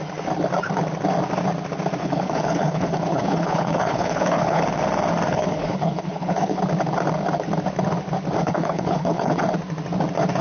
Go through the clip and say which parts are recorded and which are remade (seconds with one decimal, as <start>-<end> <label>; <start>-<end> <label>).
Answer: 0.0-2.0 recorded; 2.0-4.6 remade; 4.6-5.3 recorded; 5.3-6.6 remade; 6.6-8.4 recorded; 8.4-9.4 remade; 9.4-10.4 recorded